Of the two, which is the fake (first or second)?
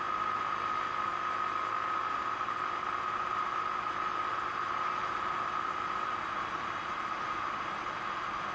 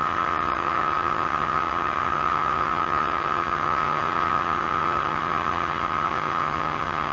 second